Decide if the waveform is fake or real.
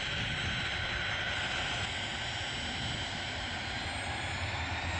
real